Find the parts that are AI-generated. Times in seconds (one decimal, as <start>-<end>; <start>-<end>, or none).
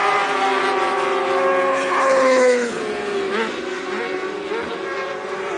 1.7-2.8